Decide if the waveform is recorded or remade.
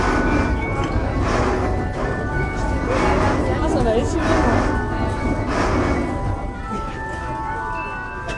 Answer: recorded